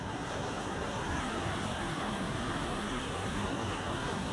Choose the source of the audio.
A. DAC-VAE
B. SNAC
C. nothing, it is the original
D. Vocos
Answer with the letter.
B